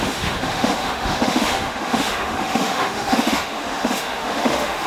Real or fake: fake